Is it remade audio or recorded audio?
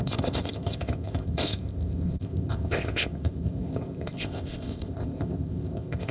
remade